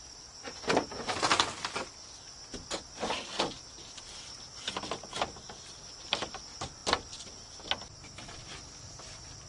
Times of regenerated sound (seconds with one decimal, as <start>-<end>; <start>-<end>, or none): none